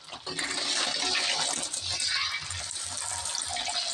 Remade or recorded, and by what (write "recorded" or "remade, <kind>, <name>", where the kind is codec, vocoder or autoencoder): recorded